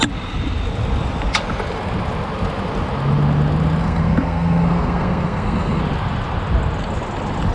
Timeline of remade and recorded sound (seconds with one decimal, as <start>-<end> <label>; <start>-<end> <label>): 0.0-3.8 recorded; 3.8-5.8 remade; 5.8-7.5 recorded

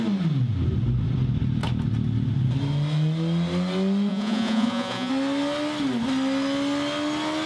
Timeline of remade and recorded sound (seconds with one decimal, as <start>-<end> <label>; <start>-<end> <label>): 0.0-4.1 recorded; 4.1-5.1 remade; 5.1-7.5 recorded

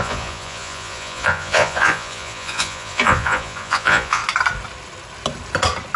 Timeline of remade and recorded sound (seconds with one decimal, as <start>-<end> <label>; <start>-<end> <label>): 0.0-4.2 remade; 4.2-6.0 recorded

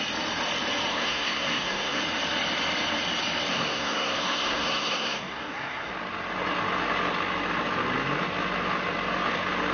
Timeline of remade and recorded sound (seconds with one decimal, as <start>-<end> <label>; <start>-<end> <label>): 0.0-0.9 recorded; 0.9-2.0 remade; 2.0-3.5 recorded; 3.5-5.9 remade; 5.9-9.7 recorded

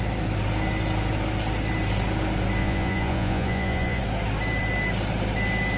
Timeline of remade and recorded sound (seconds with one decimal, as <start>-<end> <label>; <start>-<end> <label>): 0.0-2.6 recorded; 2.6-4.0 remade; 4.0-5.8 recorded

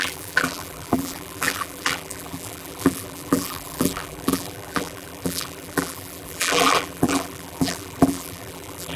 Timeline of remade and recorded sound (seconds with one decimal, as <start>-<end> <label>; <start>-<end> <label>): 0.0-9.0 remade

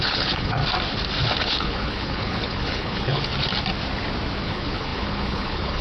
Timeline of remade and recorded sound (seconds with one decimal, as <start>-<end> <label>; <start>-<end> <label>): 0.0-0.6 remade; 0.6-1.4 recorded; 1.4-3.3 remade; 3.3-4.4 recorded; 4.4-5.8 remade

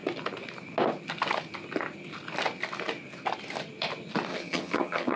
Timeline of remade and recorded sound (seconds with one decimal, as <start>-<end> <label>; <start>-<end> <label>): 0.0-4.3 recorded; 4.3-5.2 remade